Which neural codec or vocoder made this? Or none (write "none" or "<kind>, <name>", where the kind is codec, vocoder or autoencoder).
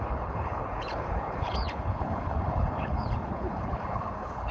codec, HILCodec